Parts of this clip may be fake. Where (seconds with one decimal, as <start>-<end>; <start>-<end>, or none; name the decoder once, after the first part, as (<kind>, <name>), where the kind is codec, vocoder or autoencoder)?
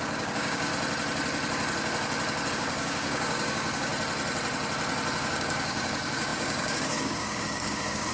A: 0.0-0.7 (codec, DAC); 2.5-3.9; 5.2-8.1